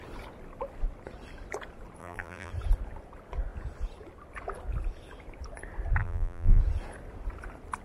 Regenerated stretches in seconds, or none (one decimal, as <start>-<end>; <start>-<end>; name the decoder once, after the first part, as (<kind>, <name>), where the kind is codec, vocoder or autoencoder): 2.0-2.5 (vocoder, BigVGAN v2); 6.0-6.6